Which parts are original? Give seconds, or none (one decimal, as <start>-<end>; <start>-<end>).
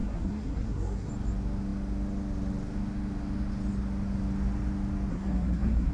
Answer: 1.1-5.1